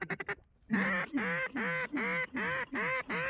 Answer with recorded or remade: recorded